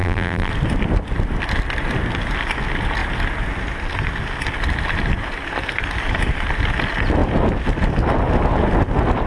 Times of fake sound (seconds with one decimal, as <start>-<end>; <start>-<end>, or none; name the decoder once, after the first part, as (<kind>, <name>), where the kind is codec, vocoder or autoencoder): 0.0-0.5 (vocoder, BigVGAN v2)